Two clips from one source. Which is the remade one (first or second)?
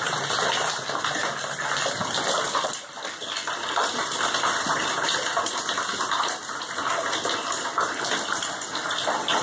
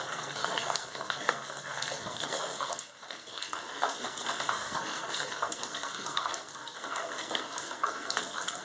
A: second